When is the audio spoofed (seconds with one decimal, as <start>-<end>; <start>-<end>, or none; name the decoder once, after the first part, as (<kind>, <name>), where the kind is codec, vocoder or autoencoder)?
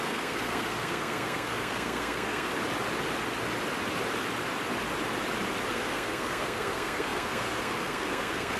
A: 0.0-2.5 (codec, SNAC); 5.7-8.6